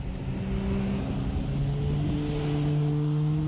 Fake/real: real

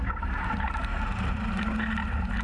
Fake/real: real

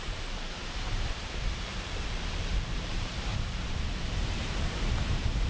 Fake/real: fake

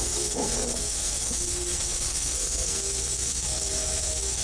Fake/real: fake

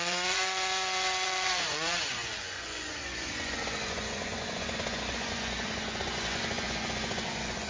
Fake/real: fake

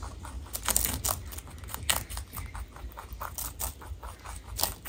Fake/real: real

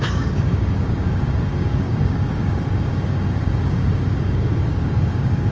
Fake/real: fake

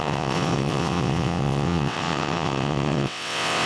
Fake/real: fake